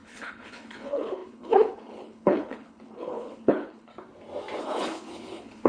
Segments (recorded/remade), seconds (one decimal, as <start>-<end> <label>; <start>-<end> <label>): 0.0-3.9 remade; 3.9-4.6 recorded; 4.6-5.7 remade